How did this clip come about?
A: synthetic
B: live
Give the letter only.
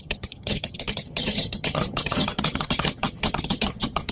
A